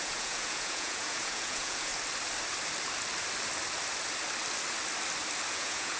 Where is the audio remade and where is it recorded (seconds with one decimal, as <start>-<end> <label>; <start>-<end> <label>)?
0.0-1.9 remade; 1.9-5.5 recorded; 5.5-6.0 remade